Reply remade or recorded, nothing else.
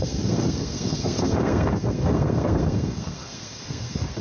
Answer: remade